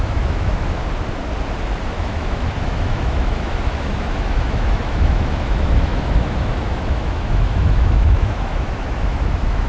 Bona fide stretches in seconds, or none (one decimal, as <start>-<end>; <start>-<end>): 0.8-1.9